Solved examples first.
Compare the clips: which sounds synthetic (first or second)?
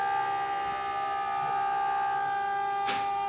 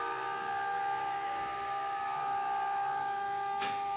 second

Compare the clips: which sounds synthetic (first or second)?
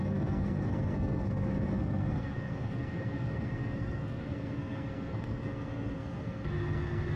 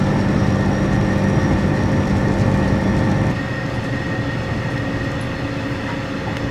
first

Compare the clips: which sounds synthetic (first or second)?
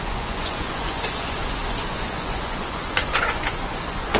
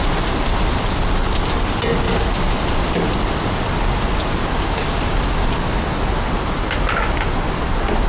first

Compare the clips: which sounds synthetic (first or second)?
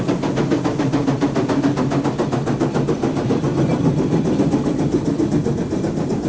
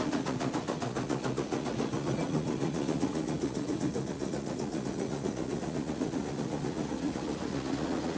second